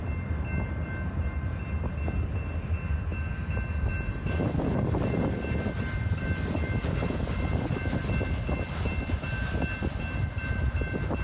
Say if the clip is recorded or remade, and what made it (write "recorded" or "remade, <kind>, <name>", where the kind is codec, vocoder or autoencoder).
recorded